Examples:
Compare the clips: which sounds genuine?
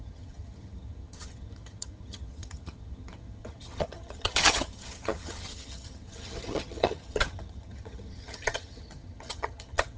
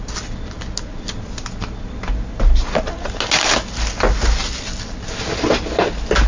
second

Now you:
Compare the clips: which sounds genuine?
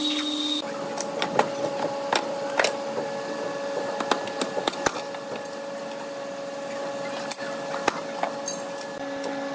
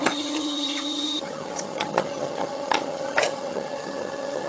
first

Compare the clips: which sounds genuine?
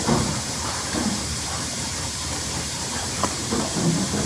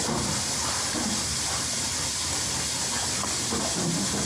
second